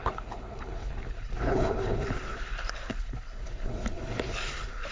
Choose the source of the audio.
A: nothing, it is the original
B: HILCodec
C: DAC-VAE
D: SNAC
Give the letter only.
B